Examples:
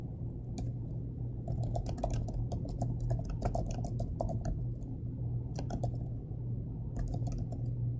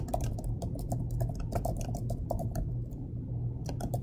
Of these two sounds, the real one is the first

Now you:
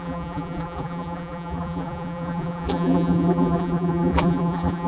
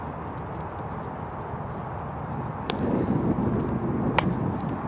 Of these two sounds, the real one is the second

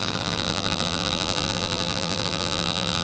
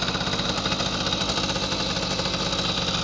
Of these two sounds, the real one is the second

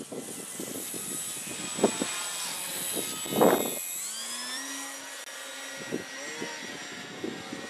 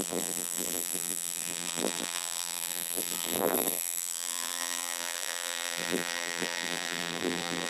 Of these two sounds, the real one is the first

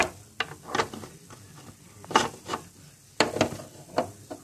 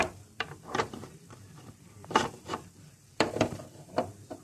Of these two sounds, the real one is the first